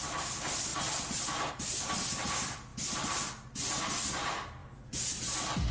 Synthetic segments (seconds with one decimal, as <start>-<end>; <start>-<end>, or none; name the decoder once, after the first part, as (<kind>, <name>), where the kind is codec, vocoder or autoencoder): none